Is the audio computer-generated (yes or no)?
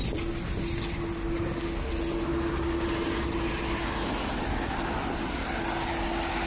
no